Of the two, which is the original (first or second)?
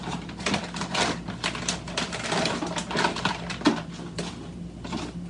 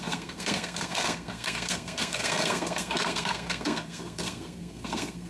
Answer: first